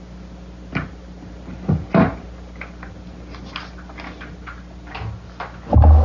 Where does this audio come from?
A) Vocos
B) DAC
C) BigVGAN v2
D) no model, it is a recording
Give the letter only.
D